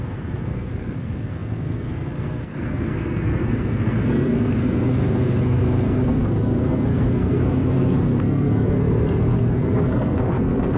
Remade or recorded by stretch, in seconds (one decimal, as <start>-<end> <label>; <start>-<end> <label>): 0.0-10.8 remade